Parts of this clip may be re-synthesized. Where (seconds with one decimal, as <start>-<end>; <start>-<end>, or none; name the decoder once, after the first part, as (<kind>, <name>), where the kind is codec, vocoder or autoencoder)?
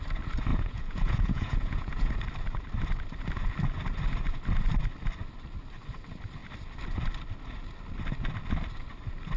0.5-2.1 (vocoder, Vocos)